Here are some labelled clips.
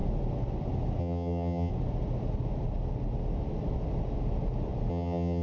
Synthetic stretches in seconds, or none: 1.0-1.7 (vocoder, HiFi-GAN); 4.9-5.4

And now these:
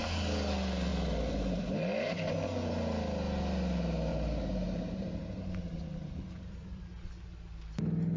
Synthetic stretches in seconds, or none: 0.9-2.3 (vocoder, BigVGAN v2); 4.1-6.8

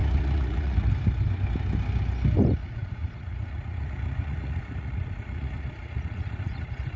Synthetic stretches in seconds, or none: 0.0-0.9 (vocoder, Vocos); 2.6-7.0

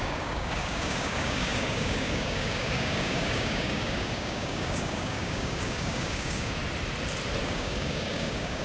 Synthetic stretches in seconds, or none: 0.0-6.6 (codec, DAC); 7.4-8.6